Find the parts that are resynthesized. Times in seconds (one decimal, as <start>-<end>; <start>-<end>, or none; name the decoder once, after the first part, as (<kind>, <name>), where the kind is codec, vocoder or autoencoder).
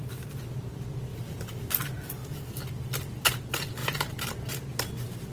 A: 1.1-1.7 (vocoder, BigVGAN v2); 2.2-3.4; 3.8-4.5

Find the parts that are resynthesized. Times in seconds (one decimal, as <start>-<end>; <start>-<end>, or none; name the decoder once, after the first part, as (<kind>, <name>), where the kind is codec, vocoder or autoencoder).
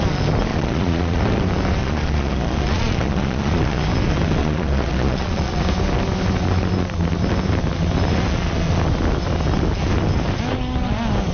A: 0.5-1.2 (vocoder, Vocos); 1.8-3.8; 4.4-5.6